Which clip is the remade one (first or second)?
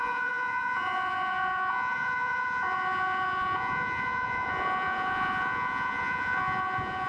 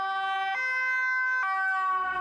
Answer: first